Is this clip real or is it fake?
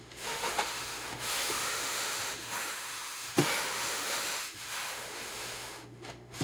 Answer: fake